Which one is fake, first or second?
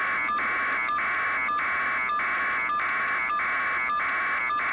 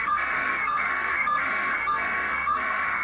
second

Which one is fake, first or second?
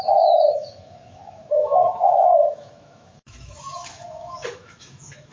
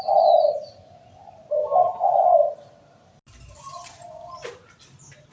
first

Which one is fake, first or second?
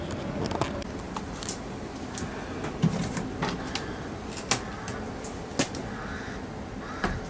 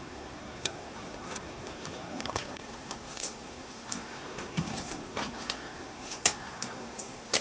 second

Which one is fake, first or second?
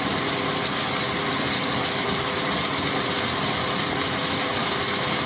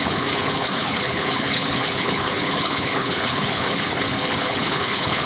second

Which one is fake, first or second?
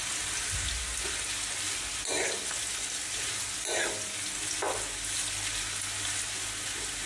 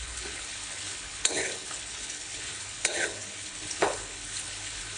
second